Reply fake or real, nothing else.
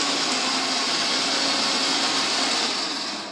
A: real